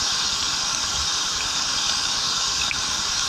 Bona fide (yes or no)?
no